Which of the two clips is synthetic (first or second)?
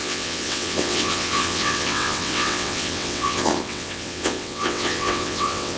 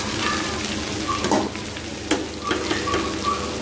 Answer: first